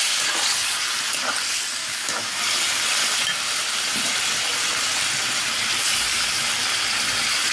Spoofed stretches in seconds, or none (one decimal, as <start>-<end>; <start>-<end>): 1.8-2.4